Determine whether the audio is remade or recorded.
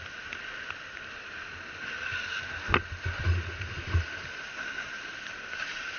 recorded